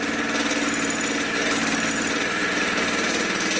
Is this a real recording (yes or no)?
yes